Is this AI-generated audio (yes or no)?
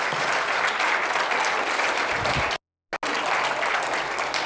no